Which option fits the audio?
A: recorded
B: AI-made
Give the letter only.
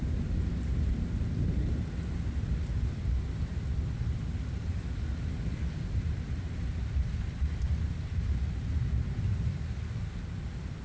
A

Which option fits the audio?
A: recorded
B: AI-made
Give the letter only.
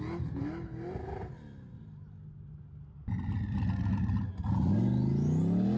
A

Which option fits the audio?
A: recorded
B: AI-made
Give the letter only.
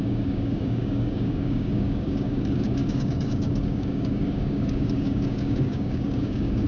B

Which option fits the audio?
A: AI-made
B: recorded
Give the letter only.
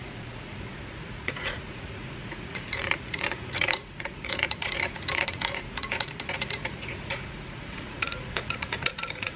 A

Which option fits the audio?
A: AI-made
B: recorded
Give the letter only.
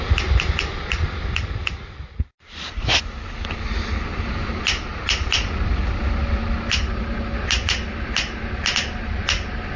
B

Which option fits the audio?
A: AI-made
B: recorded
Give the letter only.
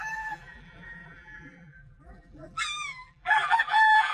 A